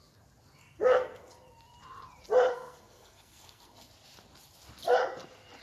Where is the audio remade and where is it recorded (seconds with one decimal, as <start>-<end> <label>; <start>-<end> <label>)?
0.0-0.6 recorded; 0.6-1.5 remade; 1.5-2.5 recorded; 2.5-3.9 remade; 3.9-5.6 recorded